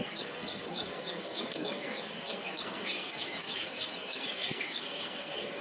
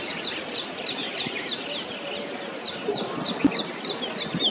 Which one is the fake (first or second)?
first